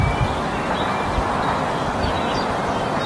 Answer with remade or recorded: recorded